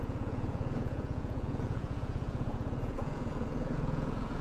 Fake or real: fake